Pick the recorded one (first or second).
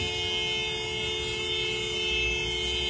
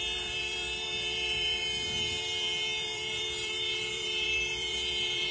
first